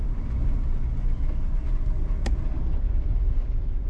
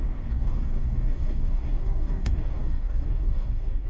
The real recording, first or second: first